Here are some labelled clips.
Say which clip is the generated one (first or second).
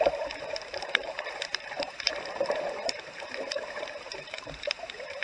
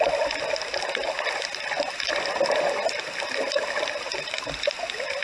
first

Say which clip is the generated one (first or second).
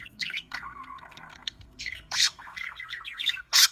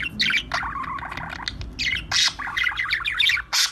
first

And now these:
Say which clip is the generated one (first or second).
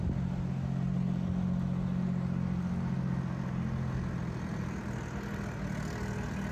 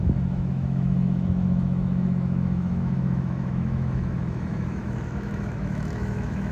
second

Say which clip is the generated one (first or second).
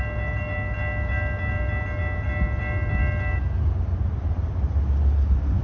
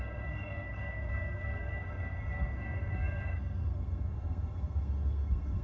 second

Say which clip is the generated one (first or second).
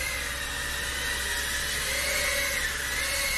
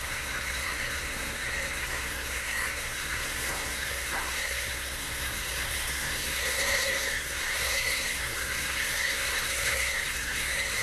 second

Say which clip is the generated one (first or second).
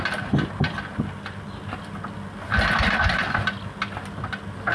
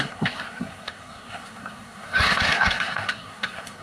second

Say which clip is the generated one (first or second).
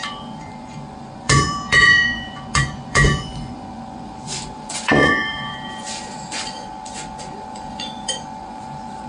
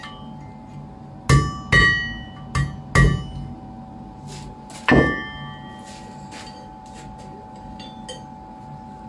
first